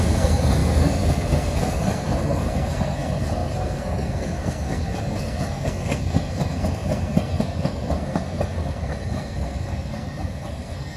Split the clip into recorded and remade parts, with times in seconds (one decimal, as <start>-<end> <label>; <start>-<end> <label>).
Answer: 0.0-11.0 remade